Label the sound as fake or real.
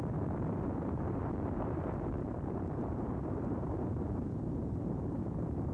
fake